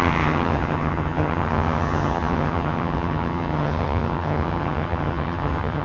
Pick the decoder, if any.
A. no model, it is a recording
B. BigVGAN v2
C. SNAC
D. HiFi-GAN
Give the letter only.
D